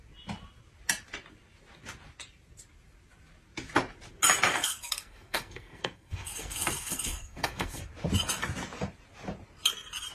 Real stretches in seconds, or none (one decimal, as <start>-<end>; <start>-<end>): 0.0-4.5; 7.8-10.1